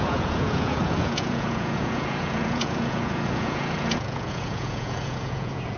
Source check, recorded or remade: remade